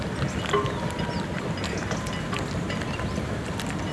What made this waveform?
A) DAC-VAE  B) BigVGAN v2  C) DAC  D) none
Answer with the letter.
D